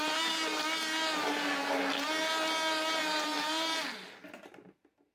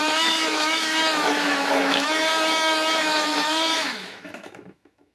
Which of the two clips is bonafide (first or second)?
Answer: first